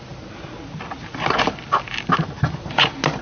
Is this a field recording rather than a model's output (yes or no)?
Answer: yes